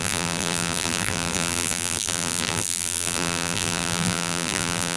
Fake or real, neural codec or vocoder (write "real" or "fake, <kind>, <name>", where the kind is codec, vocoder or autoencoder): fake, vocoder, BigVGAN v2